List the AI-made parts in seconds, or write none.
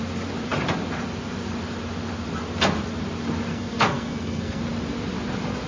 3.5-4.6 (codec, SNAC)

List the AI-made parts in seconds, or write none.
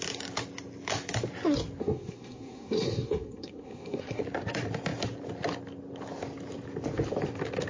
1.8-4.2 (codec, SNAC)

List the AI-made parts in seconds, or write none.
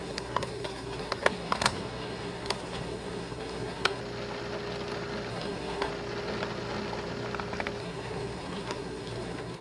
0.0-4.0 (codec, SNAC); 5.3-5.9; 7.8-9.6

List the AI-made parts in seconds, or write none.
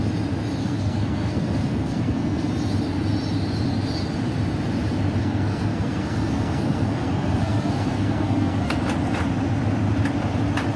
0.6-2.5 (codec, SNAC); 5.2-8.8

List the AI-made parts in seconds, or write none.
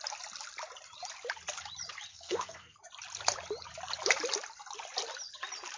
2.1-2.8 (codec, SNAC)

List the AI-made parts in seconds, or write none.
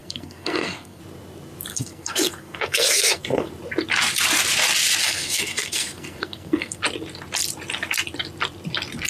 0.0-1.0 (codec, SNAC); 1.7-3.5; 5.0-6.8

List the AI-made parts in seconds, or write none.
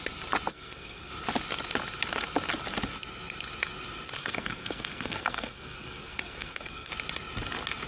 0.5-1.1 (codec, SNAC); 4.2-6.9